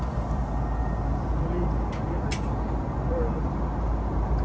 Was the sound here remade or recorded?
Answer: recorded